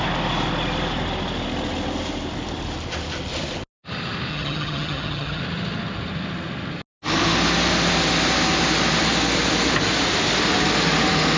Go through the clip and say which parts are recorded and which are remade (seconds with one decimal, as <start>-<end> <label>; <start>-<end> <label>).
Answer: 0.0-4.3 recorded; 4.3-5.4 remade; 5.4-11.4 recorded